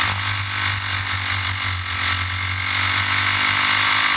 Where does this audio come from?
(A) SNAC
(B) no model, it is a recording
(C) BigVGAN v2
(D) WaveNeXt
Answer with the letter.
B